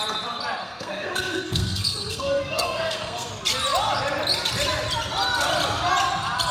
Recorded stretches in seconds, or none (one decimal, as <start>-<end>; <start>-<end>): 0.0-0.6; 3.3-6.5